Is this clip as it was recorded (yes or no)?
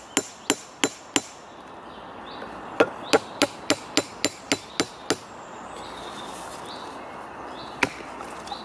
yes